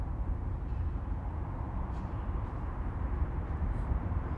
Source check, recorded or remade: remade